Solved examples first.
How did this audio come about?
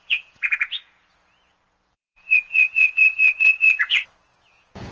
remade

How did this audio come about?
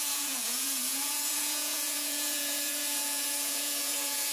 remade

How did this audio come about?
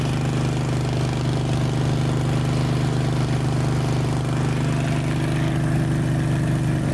recorded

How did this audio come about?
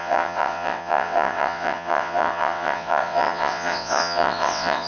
remade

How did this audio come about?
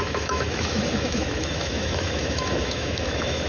remade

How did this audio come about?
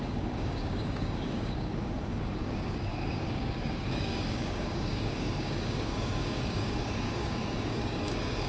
remade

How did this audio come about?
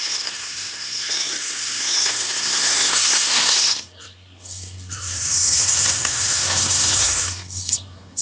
remade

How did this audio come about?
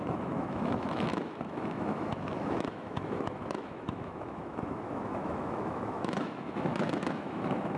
remade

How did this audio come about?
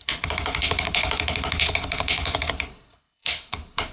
remade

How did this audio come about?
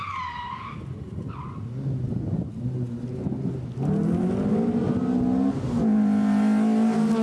recorded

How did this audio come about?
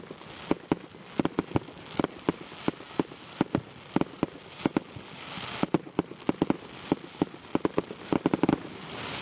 recorded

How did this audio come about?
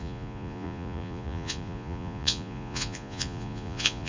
remade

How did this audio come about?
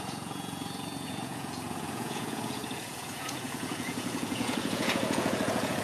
remade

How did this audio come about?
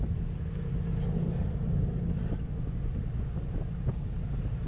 recorded